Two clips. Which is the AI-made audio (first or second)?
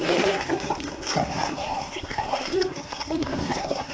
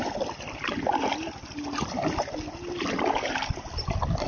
first